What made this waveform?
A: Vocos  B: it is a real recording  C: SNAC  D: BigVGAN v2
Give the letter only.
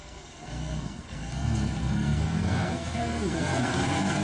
C